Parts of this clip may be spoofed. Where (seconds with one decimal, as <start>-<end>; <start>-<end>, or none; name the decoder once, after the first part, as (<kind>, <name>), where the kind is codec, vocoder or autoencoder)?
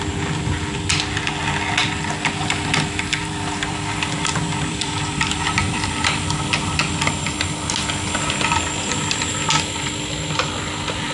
3.1-7.1 (vocoder, BigVGAN v2)